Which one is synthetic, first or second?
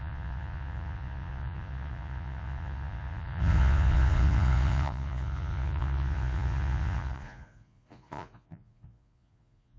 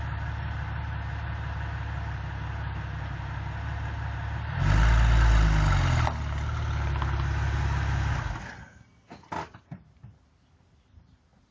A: first